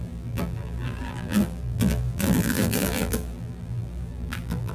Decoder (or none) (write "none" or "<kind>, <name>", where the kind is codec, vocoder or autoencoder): vocoder, BigVGAN v2